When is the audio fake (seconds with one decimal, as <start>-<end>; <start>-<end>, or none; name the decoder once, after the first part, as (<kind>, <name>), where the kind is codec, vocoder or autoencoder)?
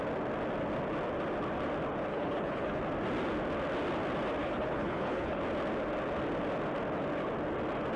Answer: 2.1-2.8 (codec, HILCodec); 4.4-5.4